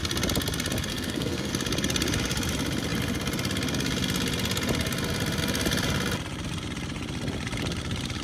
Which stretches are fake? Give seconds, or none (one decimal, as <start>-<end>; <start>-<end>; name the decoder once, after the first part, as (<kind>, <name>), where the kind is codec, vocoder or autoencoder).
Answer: 0.9-1.5 (codec, SNAC)